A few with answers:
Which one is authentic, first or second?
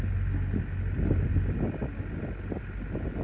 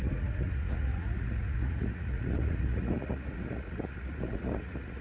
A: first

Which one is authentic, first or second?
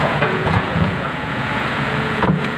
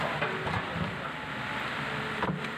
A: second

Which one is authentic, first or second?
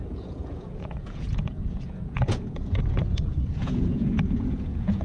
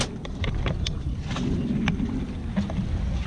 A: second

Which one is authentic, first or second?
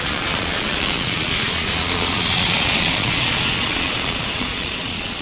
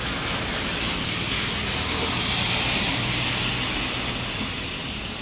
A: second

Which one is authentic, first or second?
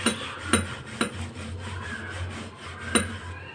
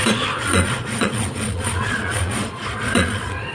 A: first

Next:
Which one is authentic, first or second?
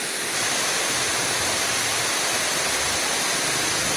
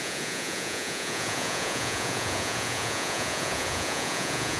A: first